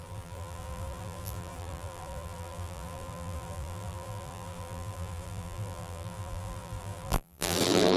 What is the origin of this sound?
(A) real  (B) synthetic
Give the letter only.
B